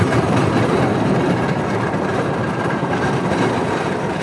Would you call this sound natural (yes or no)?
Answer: no